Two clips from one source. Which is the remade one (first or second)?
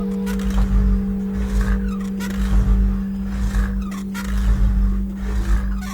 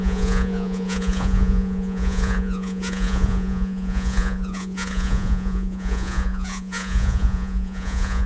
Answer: second